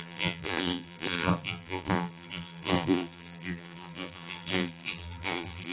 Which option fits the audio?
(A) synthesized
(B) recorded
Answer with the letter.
A